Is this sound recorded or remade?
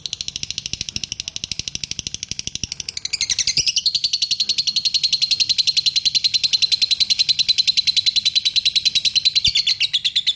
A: recorded